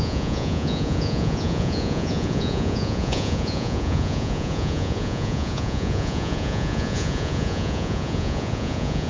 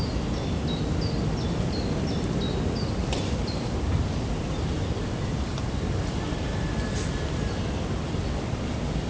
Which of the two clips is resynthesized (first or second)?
first